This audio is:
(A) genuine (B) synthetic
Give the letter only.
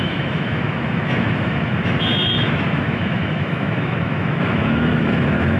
B